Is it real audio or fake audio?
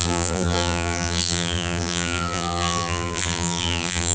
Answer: fake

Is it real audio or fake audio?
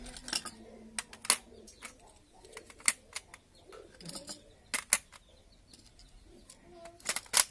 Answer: real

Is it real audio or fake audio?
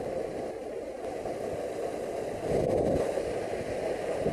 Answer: real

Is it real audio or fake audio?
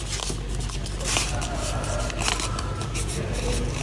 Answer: real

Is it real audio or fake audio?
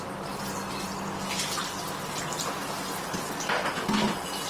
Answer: real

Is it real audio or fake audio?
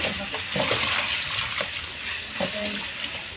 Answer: real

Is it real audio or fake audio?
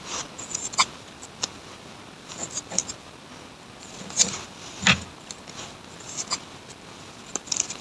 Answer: real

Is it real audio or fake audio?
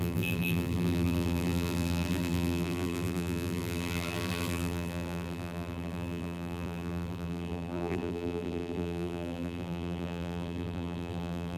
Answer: fake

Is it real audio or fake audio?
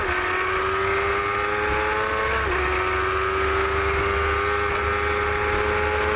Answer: real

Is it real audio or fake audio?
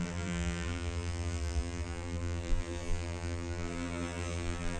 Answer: fake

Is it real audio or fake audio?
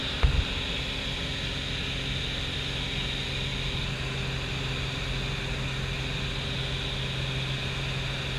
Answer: real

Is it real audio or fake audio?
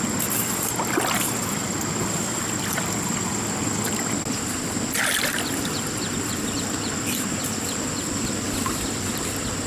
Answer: real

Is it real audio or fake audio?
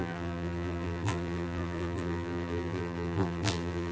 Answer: fake